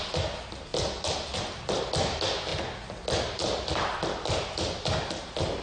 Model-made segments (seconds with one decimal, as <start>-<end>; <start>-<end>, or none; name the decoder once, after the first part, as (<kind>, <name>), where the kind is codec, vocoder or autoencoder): 0.7-2.0 (vocoder, BigVGAN v2); 2.5-5.1